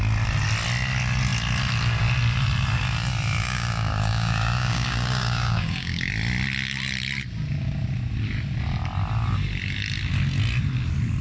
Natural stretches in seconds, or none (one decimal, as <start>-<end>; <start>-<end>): 0.0-3.4; 6.1-11.2